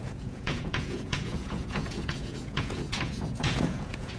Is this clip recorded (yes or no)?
no